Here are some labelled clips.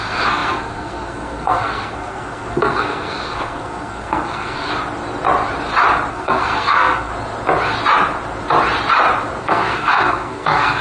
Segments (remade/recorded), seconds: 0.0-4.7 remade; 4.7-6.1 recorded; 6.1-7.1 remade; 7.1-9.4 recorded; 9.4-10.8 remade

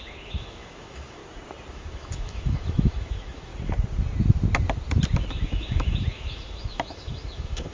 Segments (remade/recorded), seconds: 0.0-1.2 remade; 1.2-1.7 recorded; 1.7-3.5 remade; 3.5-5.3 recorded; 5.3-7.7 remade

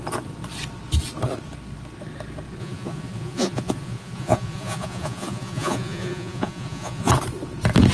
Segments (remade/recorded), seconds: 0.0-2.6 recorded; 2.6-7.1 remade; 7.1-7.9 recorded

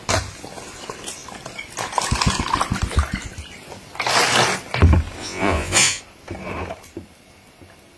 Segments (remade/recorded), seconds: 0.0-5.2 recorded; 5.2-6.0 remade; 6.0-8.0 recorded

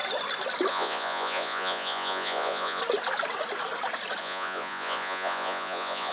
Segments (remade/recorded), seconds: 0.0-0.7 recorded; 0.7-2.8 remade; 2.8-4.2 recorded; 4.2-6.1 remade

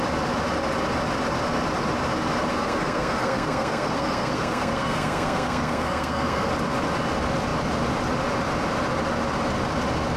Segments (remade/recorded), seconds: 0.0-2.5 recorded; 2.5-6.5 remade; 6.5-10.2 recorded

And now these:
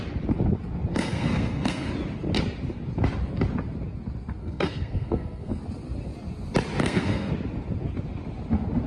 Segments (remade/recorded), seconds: 0.0-0.9 recorded; 0.9-1.9 remade; 1.9-4.4 recorded; 4.4-5.6 remade; 5.6-6.8 recorded; 6.8-7.3 remade; 7.3-8.9 recorded